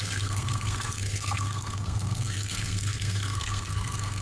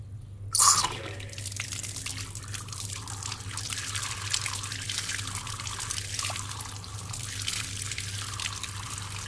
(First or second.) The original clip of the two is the second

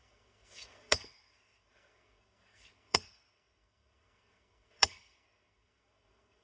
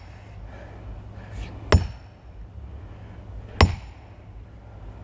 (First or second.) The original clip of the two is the second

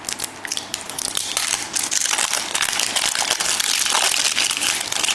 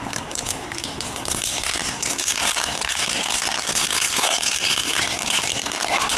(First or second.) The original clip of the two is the first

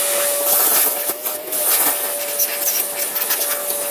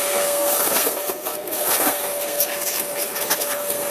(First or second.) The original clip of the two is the first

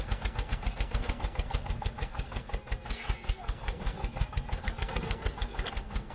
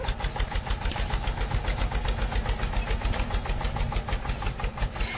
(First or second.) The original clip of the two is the second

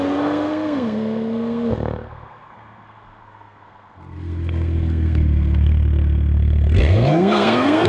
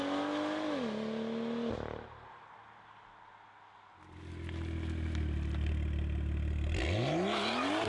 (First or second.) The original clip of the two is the second